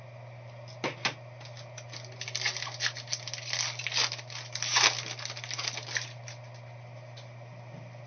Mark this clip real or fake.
real